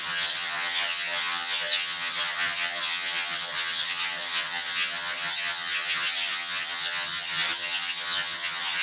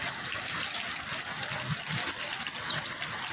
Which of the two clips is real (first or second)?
second